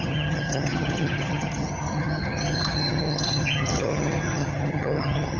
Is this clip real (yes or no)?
no